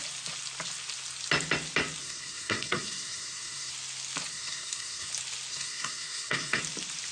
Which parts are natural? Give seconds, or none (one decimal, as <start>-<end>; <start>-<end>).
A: 0.0-2.0; 3.7-4.3; 5.1-5.5; 6.6-7.1